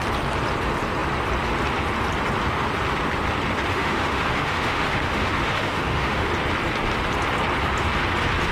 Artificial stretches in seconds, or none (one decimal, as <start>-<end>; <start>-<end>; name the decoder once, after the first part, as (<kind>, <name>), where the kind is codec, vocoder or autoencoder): 3.7-6.3 (autoencoder, DAC-VAE)